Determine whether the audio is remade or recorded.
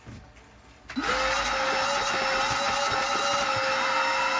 recorded